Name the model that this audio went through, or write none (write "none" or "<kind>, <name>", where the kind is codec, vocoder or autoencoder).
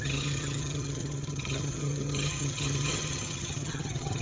vocoder, HiFi-GAN